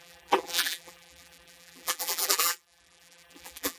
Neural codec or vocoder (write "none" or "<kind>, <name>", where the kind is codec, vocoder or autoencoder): vocoder, BigVGAN v2